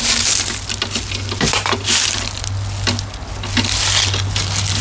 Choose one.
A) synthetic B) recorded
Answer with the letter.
B